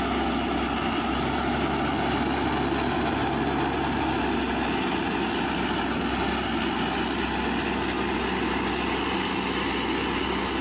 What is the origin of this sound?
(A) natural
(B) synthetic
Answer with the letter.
A